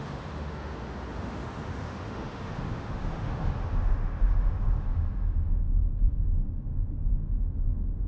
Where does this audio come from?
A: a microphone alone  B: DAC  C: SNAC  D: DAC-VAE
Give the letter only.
D